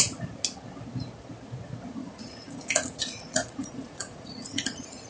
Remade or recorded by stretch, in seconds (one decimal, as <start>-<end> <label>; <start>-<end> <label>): 0.0-2.0 recorded; 2.0-5.1 remade